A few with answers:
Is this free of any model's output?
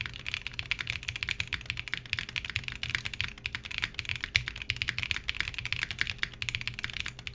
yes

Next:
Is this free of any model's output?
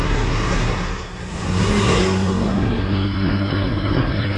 no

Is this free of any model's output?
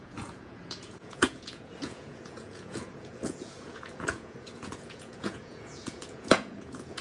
no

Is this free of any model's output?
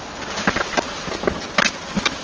yes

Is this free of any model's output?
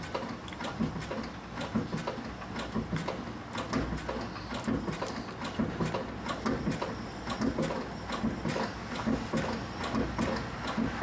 yes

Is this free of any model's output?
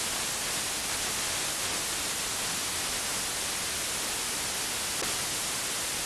yes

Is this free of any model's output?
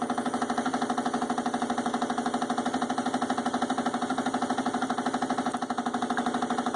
yes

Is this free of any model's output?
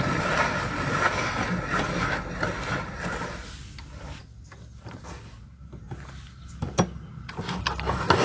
yes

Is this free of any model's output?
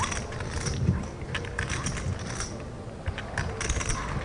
yes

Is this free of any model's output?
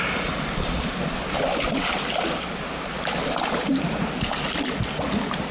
yes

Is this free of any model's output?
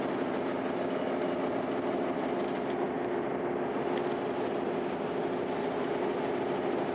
yes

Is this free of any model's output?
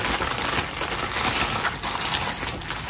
yes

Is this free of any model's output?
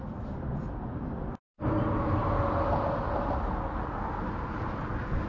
yes